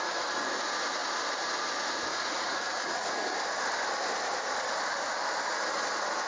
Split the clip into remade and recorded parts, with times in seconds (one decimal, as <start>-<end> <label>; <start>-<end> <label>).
0.0-2.1 recorded; 2.1-3.1 remade; 3.1-6.3 recorded